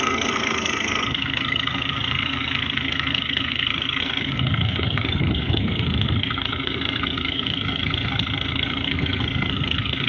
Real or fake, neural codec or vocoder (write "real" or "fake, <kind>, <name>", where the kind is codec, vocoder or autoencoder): fake, codec, SNAC